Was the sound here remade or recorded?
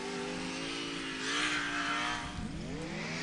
recorded